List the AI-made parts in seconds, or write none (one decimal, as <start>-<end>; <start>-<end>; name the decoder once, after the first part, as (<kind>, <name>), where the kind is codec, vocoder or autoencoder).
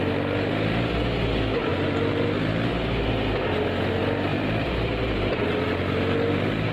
4.3-5.4 (vocoder, BigVGAN v2)